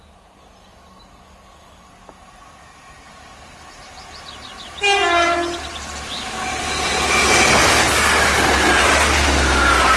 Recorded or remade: recorded